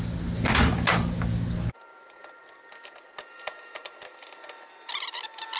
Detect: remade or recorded recorded